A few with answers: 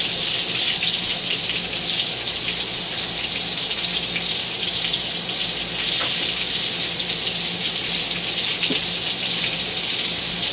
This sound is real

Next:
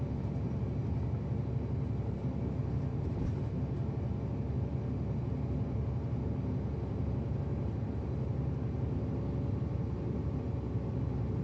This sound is real